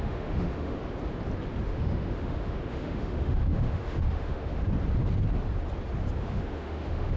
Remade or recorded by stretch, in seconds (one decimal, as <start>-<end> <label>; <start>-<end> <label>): 0.0-0.8 remade; 0.8-1.7 recorded; 1.7-4.6 remade; 4.6-6.2 recorded; 6.2-7.2 remade